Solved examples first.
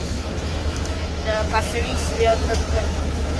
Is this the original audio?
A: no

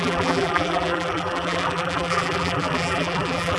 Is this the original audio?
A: no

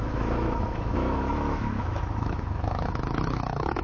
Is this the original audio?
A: no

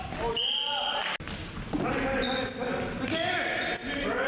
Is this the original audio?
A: yes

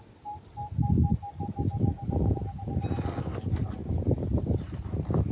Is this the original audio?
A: yes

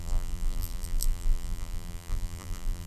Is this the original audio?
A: no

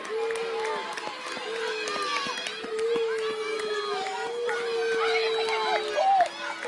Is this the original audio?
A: yes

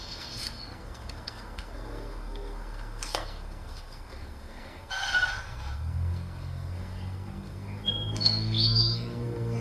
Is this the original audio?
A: no